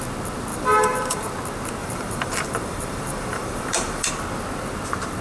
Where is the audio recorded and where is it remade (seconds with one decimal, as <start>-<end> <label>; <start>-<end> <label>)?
0.0-0.5 recorded; 0.5-1.3 remade; 1.3-1.8 recorded; 1.8-4.1 remade; 4.1-5.2 recorded